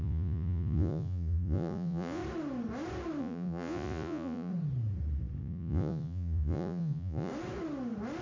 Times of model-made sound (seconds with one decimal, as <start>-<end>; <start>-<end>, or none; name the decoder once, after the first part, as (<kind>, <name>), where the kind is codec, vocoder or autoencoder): 0.0-2.2 (vocoder, Vocos); 3.2-4.5; 5.4-7.3